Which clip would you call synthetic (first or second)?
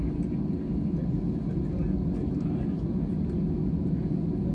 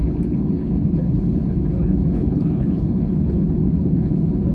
second